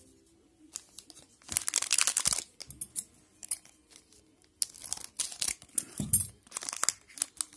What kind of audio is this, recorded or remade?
recorded